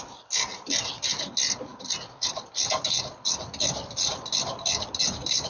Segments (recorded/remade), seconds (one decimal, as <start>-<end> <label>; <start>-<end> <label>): 0.0-5.5 recorded